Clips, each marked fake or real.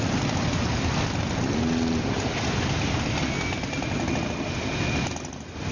real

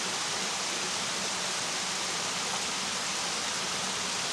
real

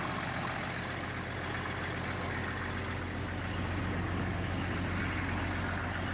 real